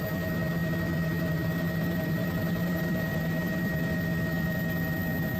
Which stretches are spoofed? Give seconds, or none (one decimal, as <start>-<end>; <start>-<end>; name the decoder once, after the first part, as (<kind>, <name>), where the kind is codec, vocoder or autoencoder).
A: 0.6-3.8 (vocoder, BigVGAN v2)